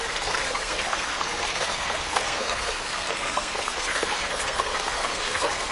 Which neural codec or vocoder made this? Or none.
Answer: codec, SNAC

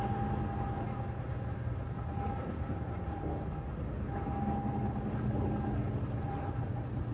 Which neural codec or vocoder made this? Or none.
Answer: none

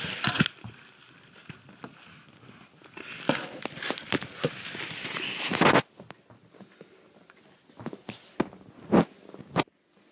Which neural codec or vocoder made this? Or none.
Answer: none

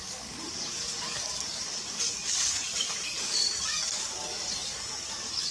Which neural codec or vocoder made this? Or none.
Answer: codec, DAC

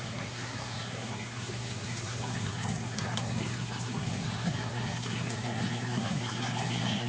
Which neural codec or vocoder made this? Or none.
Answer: codec, SNAC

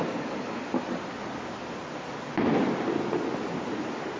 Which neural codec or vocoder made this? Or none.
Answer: none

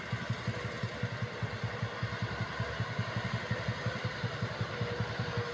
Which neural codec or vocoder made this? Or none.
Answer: none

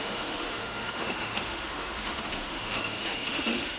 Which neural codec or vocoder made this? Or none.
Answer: autoencoder, DAC-VAE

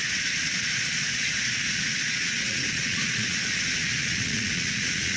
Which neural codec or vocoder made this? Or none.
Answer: vocoder, Vocos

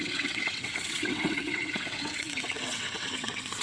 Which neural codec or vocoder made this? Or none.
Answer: vocoder, WaveNeXt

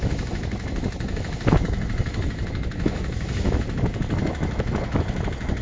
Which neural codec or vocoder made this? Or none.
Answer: autoencoder, DAC-VAE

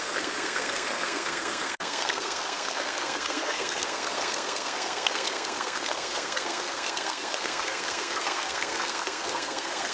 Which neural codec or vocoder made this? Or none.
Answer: codec, SNAC